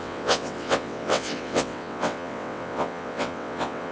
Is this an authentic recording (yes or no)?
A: no